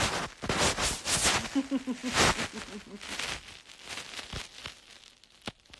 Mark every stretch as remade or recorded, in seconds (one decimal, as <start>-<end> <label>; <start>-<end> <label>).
0.0-5.8 recorded